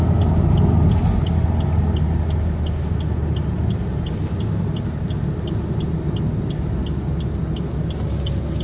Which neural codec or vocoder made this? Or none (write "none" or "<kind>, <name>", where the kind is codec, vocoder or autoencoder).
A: none